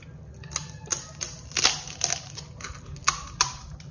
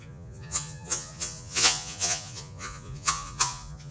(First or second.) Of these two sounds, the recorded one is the first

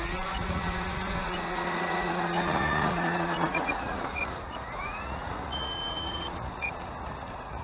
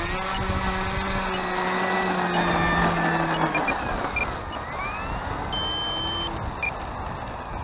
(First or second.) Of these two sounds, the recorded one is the second